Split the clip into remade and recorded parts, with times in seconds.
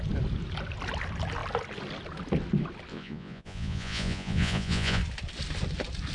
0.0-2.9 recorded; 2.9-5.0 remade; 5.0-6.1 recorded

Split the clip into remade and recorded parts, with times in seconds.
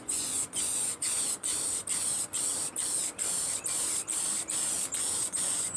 0.0-1.5 remade; 1.5-5.0 recorded; 5.0-5.8 remade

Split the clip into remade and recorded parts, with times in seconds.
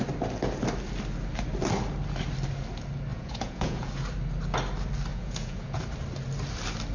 0.0-3.1 recorded; 3.1-3.9 remade; 3.9-5.1 recorded; 5.1-5.8 remade; 5.8-6.9 recorded